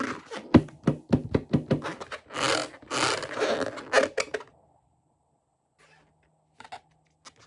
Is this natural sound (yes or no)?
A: yes